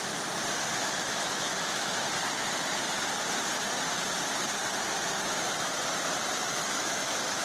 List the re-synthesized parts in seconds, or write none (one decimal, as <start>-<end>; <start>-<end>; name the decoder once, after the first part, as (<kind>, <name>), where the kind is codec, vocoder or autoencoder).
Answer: 0.8-1.9 (autoencoder, DAC-VAE); 6.6-7.4